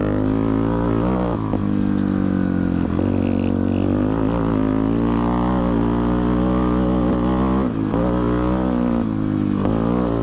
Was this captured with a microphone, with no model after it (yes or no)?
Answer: yes